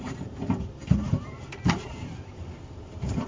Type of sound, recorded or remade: remade